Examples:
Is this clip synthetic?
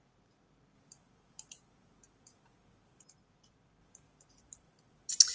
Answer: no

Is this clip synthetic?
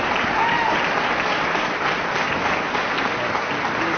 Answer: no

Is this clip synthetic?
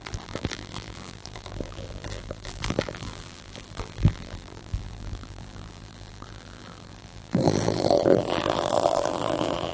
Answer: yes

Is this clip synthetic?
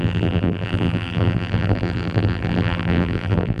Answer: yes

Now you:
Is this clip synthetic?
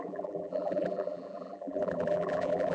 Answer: yes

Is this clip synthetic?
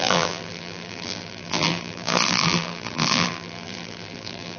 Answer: yes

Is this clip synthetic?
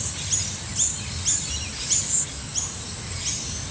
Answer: no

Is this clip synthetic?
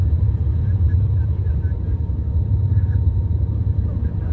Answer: yes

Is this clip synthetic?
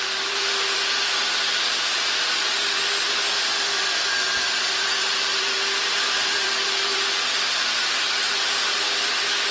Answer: yes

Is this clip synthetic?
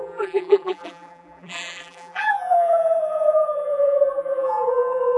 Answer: yes